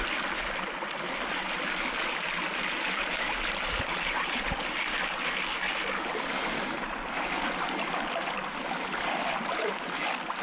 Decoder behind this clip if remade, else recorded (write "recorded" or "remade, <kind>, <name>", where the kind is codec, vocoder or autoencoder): recorded